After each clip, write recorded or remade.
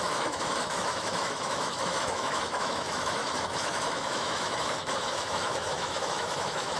remade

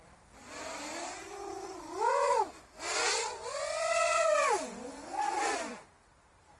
recorded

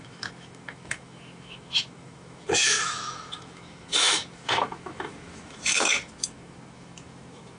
remade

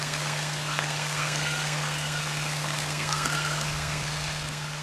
remade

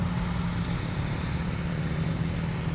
recorded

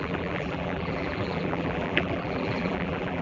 remade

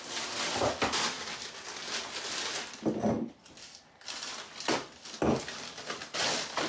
recorded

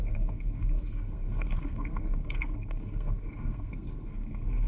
remade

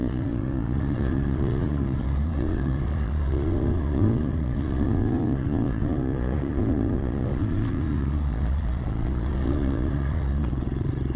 remade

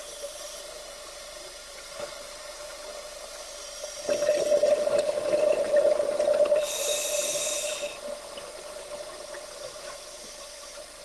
recorded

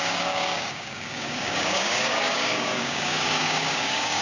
remade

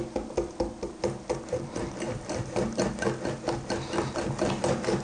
recorded